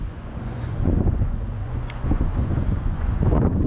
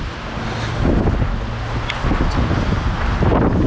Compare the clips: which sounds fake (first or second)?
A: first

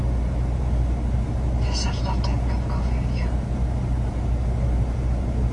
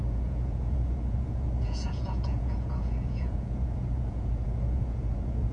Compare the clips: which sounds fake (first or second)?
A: second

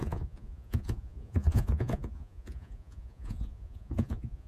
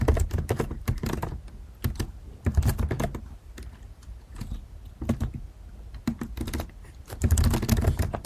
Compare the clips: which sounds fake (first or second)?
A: first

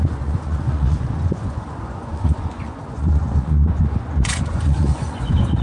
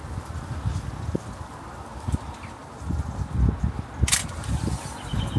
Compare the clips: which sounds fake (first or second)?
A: first